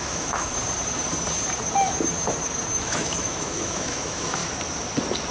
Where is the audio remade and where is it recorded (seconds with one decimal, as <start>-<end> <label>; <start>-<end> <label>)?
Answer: 0.0-0.5 remade; 0.5-2.7 recorded; 2.7-4.4 remade; 4.4-5.3 recorded